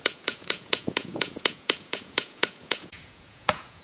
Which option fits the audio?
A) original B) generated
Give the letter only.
B